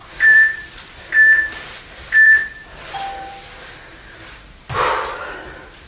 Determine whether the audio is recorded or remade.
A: remade